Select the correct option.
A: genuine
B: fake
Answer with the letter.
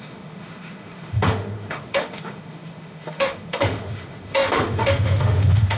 B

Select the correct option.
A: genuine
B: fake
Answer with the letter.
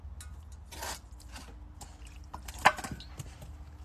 A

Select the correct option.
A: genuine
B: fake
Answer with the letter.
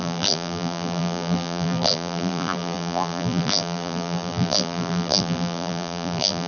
B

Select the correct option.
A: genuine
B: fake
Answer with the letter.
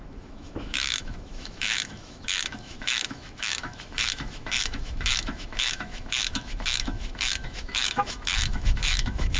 B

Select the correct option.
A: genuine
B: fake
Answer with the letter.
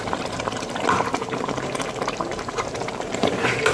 B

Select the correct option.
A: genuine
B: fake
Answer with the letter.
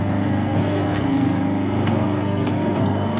B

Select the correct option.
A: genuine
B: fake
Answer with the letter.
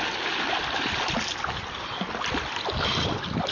A